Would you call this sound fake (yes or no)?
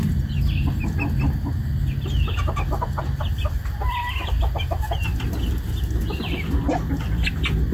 no